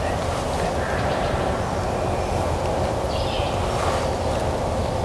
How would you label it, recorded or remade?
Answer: recorded